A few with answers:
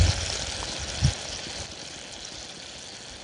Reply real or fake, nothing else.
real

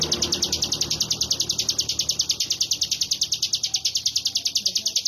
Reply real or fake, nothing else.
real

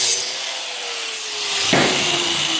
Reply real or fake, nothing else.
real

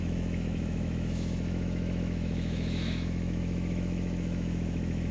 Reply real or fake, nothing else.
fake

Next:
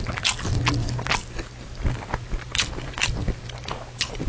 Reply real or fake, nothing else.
real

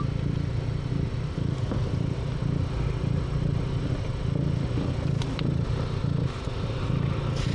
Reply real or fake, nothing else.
real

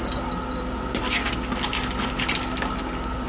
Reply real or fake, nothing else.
real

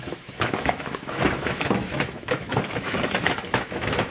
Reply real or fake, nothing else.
fake